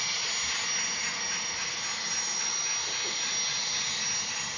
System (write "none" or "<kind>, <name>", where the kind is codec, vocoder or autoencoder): none